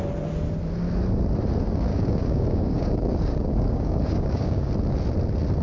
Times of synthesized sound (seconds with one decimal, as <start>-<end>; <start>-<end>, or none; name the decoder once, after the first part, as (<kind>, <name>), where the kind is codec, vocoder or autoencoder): 1.9-4.7 (codec, DAC)